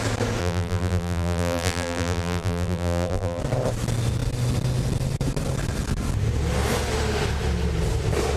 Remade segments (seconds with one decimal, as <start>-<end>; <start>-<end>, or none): 0.4-3.4